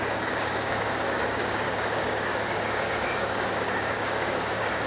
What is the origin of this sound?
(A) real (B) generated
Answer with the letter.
B